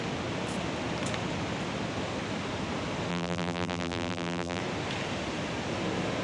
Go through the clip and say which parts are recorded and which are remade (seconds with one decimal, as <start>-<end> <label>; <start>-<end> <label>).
0.0-3.1 recorded; 3.1-4.6 remade; 4.6-6.2 recorded